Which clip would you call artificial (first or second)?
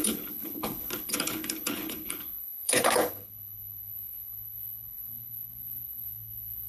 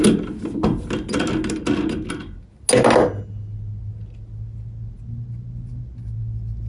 first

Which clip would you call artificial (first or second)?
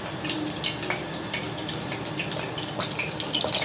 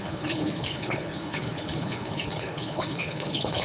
second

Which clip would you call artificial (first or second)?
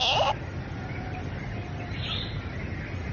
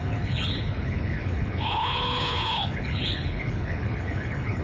second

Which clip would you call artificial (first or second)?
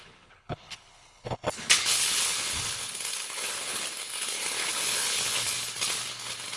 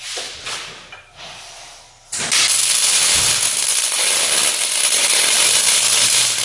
first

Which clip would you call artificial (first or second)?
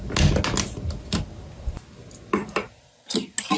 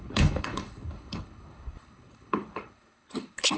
second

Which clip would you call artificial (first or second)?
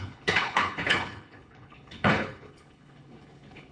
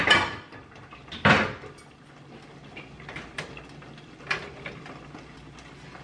first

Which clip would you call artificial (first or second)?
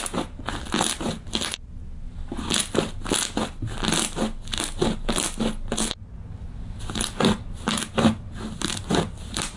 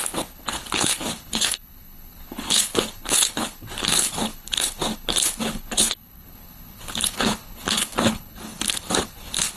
second